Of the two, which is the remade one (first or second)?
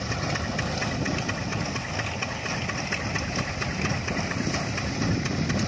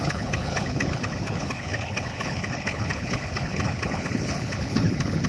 second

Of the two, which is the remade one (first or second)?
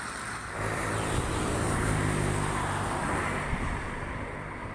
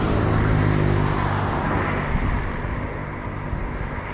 first